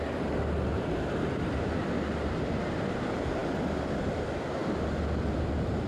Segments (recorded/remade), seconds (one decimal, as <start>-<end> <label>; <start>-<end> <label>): 0.0-5.9 recorded